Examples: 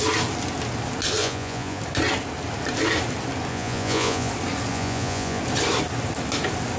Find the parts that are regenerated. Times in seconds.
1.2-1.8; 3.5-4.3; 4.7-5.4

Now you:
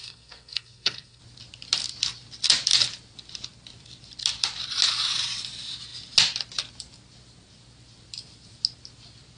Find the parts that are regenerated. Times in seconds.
0.0-1.2

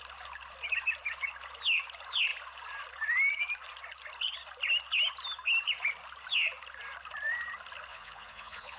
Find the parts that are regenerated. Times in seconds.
7.9-8.8

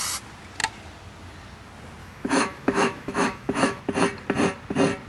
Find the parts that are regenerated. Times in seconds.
2.0-3.8

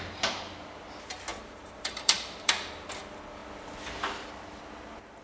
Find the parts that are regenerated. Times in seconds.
1.3-2.5

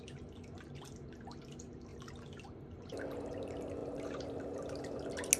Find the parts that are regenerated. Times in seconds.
3.8-4.4

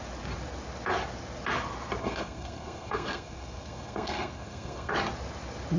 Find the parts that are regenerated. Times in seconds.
2.0-4.9

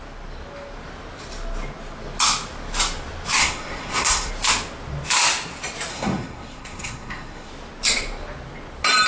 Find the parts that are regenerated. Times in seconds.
3.4-4.3; 5.9-7.5